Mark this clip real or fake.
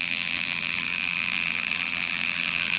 fake